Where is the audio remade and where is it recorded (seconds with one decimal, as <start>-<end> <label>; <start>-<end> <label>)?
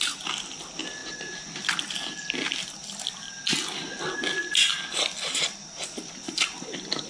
0.0-7.1 recorded